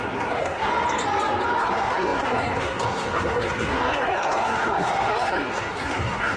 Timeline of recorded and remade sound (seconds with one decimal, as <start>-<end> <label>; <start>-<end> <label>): 0.0-0.7 remade; 0.7-1.6 recorded; 1.6-6.4 remade